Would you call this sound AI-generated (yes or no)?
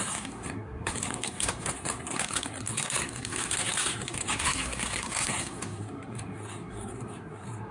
yes